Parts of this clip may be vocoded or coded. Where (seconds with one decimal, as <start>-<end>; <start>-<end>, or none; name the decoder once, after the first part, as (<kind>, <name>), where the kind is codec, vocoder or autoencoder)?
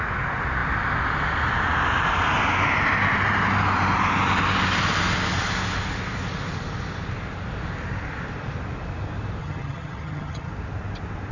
9.4-10.5 (vocoder, HiFi-GAN)